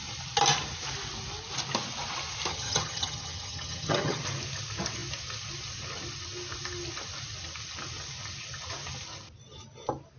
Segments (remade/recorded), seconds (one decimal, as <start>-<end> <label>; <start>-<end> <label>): 0.0-2.5 recorded; 2.5-4.2 remade; 4.2-10.2 recorded